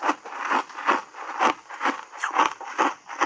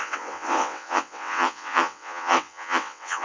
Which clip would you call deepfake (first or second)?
second